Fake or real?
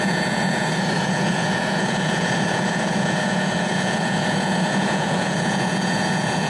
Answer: fake